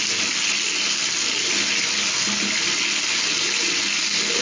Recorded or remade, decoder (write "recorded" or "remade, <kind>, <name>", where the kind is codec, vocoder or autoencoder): recorded